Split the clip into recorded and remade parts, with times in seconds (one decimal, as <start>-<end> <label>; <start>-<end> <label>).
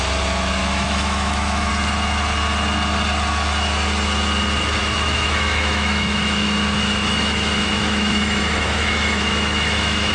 0.0-0.6 recorded; 0.6-1.7 remade; 1.7-4.8 recorded; 4.8-10.1 remade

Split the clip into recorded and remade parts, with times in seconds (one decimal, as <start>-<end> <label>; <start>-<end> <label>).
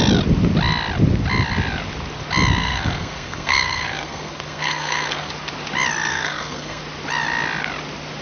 0.0-2.6 recorded; 2.6-5.3 remade; 5.3-6.1 recorded; 6.1-6.8 remade; 6.8-8.2 recorded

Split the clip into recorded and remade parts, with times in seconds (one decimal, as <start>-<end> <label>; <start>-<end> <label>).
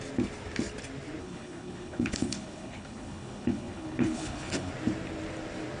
0.0-1.2 recorded; 1.2-4.7 remade; 4.7-5.8 recorded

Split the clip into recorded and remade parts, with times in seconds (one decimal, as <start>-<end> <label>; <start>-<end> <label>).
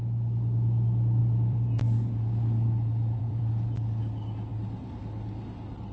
0.0-1.2 recorded; 1.2-3.4 remade; 3.4-4.5 recorded; 4.5-5.0 remade; 5.0-5.9 recorded